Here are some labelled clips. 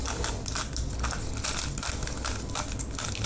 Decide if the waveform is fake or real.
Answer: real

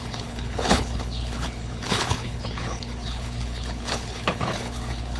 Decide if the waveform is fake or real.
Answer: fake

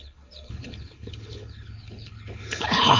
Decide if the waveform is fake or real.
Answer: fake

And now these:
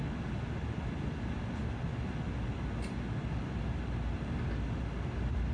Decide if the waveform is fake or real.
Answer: real